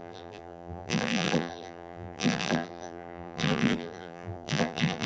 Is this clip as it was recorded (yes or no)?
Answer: no